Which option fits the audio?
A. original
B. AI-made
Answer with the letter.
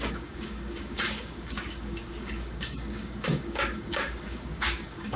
B